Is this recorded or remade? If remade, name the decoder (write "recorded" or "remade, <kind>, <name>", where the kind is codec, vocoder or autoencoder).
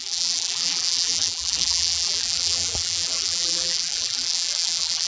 remade, vocoder, BigVGAN v2